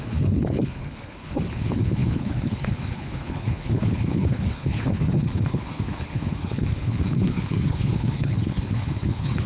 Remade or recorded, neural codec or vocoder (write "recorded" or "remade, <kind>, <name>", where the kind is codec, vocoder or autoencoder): remade, codec, HILCodec